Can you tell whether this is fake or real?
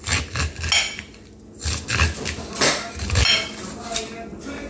real